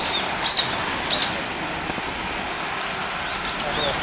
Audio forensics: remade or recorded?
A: recorded